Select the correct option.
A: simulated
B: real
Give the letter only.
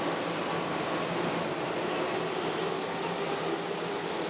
B